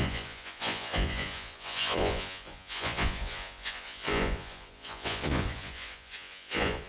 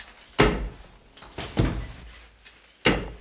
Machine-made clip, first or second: first